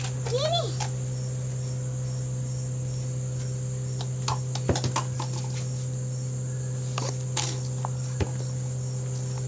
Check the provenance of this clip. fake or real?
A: real